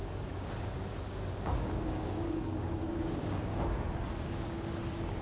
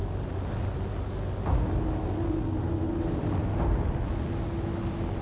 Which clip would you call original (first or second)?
second